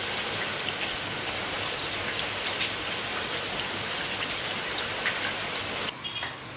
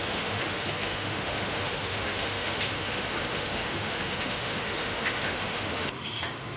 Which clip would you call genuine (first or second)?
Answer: first